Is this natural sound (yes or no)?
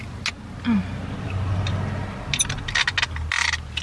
yes